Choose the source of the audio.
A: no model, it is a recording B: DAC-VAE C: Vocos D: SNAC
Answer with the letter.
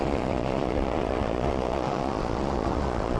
C